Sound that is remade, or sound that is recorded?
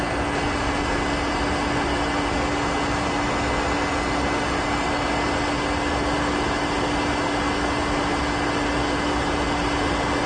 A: recorded